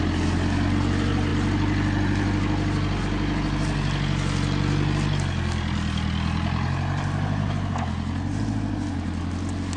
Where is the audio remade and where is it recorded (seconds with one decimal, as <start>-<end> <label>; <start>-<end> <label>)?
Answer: 0.0-9.8 recorded